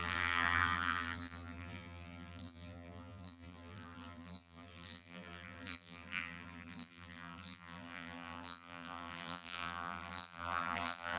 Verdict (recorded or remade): remade